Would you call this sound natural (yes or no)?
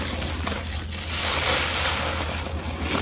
yes